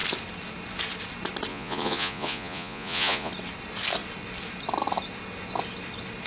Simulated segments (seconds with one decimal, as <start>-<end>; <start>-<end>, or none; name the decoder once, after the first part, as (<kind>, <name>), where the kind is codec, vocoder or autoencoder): 1.5-3.3 (vocoder, Vocos)